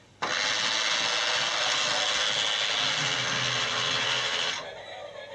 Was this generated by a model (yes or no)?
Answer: no